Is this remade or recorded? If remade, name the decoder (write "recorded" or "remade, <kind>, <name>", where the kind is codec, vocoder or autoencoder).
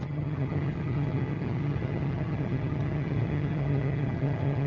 remade, vocoder, HiFi-GAN